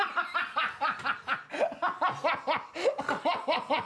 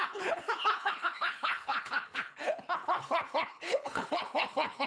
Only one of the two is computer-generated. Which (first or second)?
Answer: second